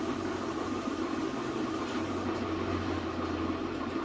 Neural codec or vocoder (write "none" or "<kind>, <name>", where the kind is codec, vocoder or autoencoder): none